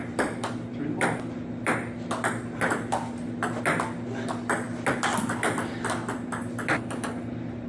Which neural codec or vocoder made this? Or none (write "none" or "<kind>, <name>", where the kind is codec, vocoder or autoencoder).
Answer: none